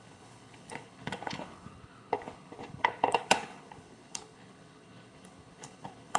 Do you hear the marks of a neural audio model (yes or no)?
yes